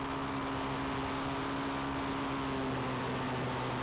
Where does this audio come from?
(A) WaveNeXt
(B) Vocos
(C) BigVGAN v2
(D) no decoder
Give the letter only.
D